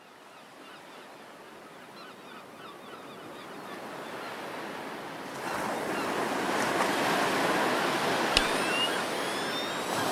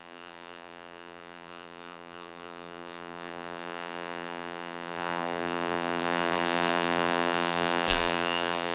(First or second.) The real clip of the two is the first